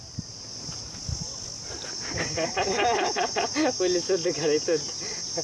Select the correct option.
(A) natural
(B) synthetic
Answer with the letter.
A